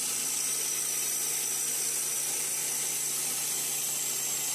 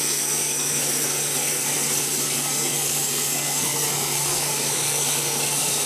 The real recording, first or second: first